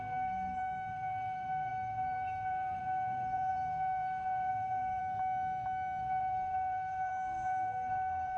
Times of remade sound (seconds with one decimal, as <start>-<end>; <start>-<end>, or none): 0.0-5.0; 6.0-8.4